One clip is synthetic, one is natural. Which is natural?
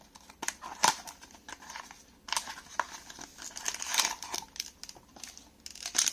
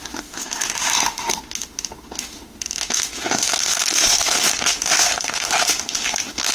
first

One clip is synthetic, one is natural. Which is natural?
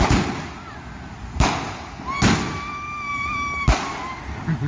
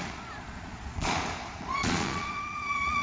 first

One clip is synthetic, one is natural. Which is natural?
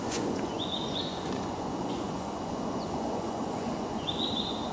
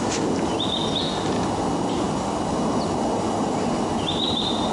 second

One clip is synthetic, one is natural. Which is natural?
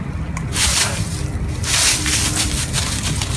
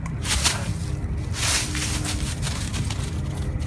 second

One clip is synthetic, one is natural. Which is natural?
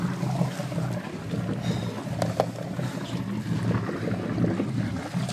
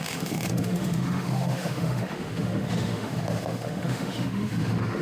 first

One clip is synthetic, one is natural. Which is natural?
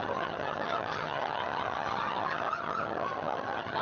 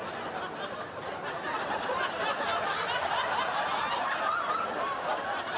second